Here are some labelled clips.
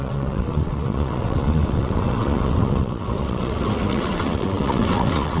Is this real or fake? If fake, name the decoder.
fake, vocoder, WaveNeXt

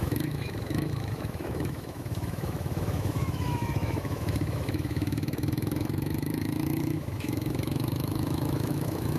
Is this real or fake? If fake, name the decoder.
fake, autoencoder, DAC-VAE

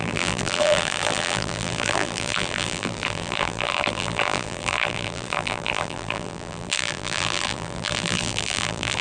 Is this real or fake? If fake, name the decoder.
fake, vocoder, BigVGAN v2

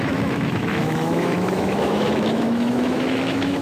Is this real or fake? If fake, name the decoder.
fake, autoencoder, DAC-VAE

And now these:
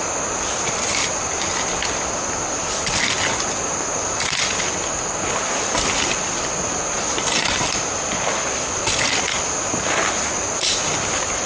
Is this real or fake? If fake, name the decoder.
real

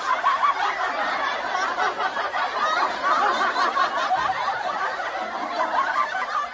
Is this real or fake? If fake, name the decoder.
real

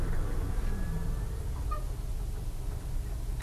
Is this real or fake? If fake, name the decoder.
real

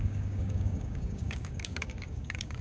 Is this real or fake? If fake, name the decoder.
fake, codec, DAC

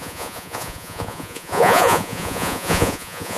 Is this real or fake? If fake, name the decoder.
fake, vocoder, Vocos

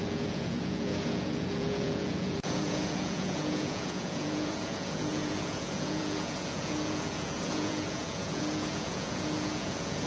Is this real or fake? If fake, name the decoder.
fake, vocoder, Vocos